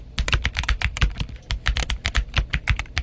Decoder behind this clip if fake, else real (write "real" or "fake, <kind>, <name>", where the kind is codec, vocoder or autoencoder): real